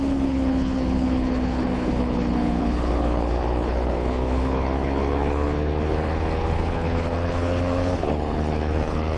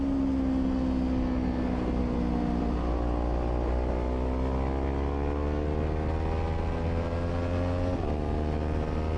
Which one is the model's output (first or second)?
first